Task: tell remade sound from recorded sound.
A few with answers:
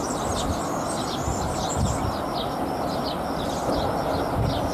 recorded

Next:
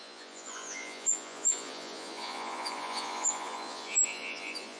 remade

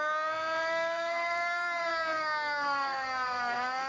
remade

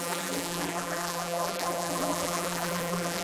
remade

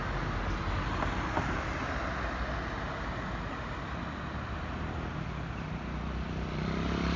recorded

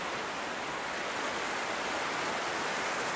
recorded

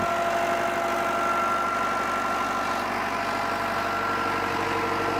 recorded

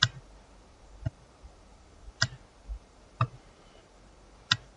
remade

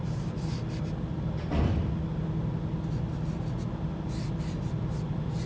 recorded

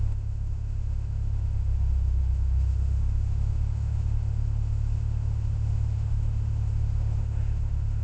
remade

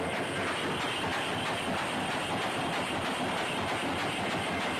recorded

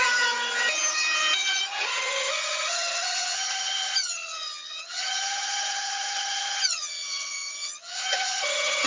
remade